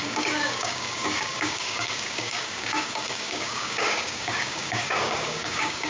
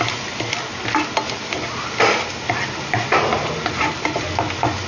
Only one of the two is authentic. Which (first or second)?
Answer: second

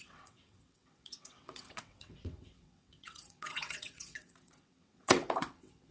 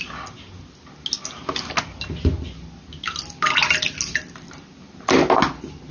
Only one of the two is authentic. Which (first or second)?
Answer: second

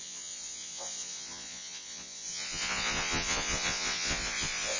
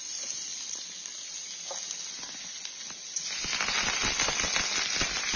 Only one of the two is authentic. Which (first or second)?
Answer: second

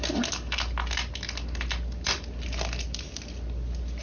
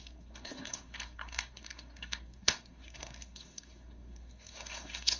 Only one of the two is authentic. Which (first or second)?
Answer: first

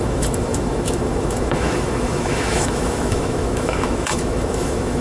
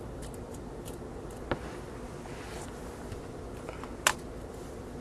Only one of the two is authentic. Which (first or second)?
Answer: second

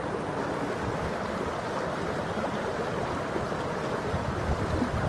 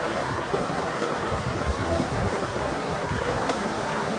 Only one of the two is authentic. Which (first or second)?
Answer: first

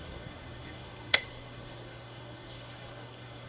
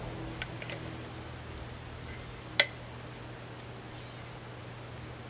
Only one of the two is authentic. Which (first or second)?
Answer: second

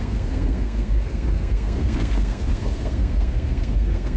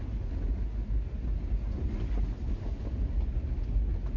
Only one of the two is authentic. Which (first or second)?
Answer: second